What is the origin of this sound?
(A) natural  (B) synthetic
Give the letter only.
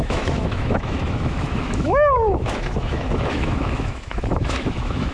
B